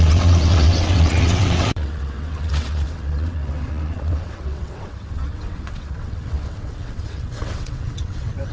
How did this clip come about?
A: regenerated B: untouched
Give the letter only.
A